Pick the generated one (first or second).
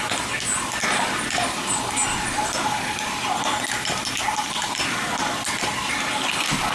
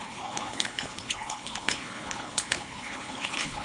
second